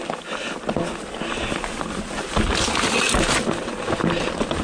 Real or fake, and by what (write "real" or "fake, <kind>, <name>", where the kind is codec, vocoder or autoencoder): real